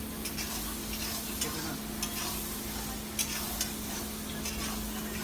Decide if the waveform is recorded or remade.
recorded